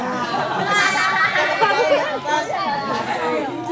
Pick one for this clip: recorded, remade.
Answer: recorded